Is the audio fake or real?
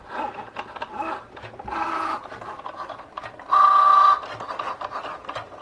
real